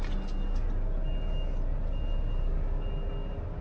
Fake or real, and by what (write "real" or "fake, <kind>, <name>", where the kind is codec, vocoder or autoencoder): real